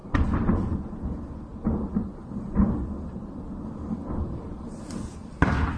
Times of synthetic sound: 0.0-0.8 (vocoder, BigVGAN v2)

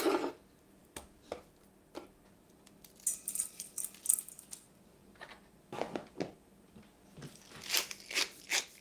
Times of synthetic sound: none

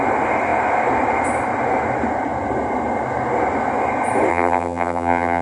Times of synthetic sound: 4.3-5.4 (vocoder, BigVGAN v2)